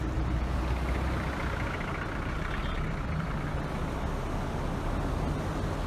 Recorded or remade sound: recorded